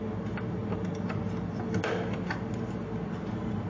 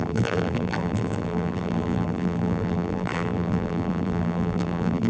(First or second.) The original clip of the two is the first